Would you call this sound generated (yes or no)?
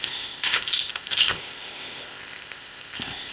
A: yes